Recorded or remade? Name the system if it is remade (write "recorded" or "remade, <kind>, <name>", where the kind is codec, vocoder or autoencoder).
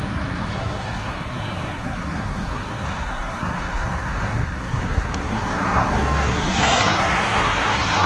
remade, codec, SNAC